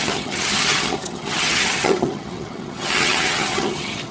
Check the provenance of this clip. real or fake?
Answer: fake